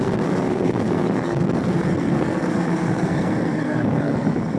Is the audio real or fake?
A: fake